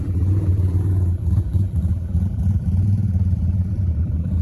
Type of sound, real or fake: fake